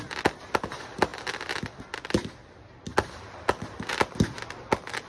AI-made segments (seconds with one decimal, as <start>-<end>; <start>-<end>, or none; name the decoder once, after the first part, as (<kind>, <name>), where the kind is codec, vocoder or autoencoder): none